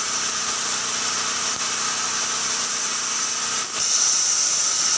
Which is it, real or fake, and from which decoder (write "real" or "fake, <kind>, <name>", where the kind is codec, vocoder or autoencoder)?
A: real